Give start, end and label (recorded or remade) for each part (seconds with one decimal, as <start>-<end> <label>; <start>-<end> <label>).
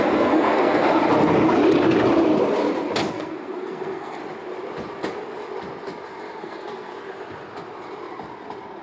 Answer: 0.0-1.0 remade; 1.0-3.1 recorded; 3.1-4.2 remade; 4.2-6.4 recorded; 6.4-6.9 remade; 6.9-8.8 recorded